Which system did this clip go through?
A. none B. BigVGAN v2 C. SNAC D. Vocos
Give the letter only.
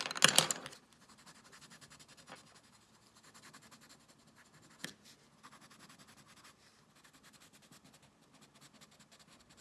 A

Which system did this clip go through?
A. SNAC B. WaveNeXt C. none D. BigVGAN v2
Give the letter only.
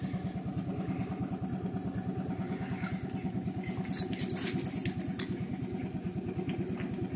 C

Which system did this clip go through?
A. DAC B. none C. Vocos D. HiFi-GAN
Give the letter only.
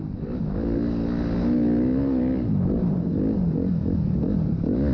B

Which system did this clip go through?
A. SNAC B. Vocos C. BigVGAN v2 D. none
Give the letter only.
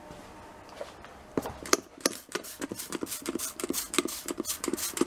C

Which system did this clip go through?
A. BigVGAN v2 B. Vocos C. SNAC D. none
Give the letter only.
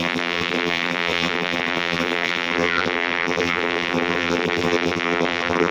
A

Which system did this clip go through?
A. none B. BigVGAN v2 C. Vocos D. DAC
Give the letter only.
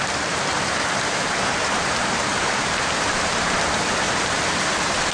B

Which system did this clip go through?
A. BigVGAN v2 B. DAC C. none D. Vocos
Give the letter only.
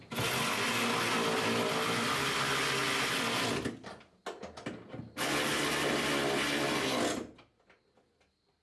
C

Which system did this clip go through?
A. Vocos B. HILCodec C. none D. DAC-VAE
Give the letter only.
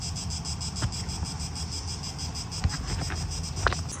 C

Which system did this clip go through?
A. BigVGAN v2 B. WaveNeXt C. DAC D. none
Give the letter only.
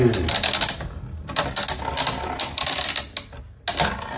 D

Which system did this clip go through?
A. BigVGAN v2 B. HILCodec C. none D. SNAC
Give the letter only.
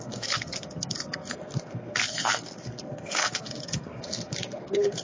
D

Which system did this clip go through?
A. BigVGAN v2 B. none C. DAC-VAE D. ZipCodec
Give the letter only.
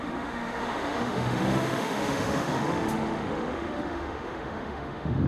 C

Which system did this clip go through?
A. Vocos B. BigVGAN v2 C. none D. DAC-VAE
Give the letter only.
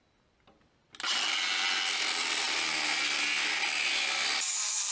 C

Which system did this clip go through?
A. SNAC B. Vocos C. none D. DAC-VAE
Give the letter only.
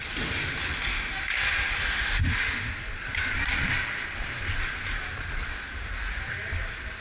C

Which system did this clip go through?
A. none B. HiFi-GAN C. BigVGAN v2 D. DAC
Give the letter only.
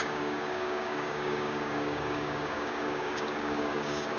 D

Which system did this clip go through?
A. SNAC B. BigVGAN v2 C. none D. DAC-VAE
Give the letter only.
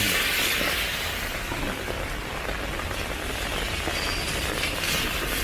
C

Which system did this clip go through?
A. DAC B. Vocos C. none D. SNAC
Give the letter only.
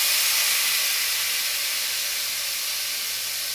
C